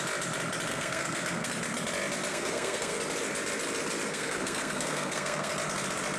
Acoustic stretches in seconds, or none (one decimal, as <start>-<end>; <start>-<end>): 0.0-0.7; 1.5-2.3; 3.0-4.1; 5.5-6.2